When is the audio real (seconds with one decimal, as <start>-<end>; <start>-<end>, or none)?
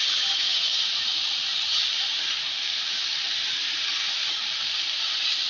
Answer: 0.0-5.5